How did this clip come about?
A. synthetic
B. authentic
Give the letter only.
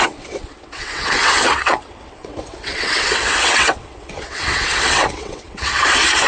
A